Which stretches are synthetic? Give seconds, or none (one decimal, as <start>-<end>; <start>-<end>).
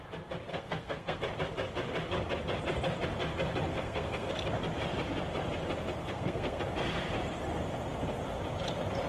0.5-1.2; 3.7-4.3; 6.0-6.6